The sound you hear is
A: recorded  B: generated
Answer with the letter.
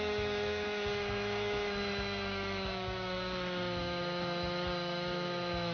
B